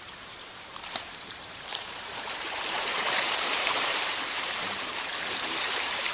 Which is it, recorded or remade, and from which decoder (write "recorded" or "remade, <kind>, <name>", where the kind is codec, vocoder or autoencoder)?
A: remade, vocoder, BigVGAN v2